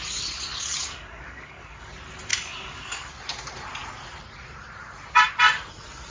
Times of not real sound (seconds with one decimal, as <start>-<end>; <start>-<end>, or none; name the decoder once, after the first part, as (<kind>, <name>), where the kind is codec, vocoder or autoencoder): 0.8-1.9 (codec, DAC); 2.3-3.1